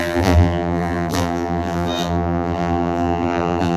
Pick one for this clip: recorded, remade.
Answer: remade